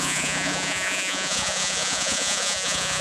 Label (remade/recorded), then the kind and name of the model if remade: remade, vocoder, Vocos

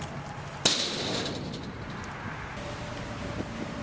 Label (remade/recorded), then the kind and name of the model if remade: recorded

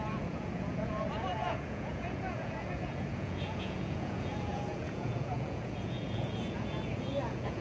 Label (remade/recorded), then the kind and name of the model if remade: remade, vocoder, Vocos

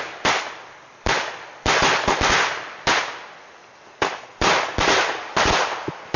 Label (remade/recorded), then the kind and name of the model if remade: recorded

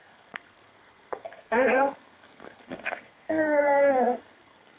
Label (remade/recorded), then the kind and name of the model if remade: remade, codec, SNAC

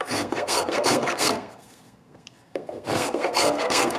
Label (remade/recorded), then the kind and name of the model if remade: remade, codec, SNAC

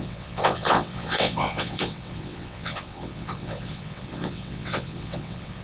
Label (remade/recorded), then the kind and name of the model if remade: remade, vocoder, WaveNeXt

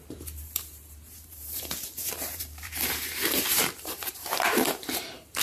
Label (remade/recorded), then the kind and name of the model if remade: remade, vocoder, BigVGAN v2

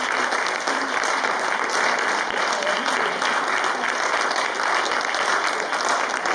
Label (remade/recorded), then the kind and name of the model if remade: recorded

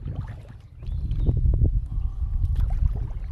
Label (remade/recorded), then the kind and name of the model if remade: recorded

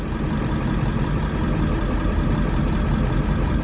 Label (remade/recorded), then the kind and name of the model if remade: recorded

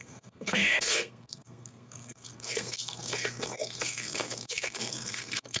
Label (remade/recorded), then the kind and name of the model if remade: remade, codec, SNAC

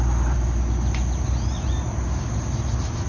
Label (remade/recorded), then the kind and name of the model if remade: recorded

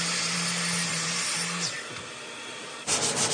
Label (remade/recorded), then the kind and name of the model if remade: remade, vocoder, BigVGAN v2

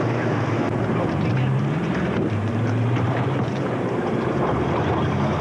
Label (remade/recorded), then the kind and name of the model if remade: remade, vocoder, BigVGAN v2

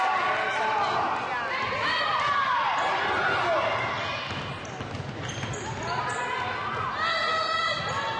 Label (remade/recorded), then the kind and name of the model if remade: recorded